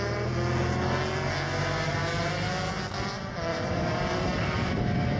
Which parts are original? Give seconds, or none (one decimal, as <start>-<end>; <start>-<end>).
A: 0.0-3.5; 4.7-5.2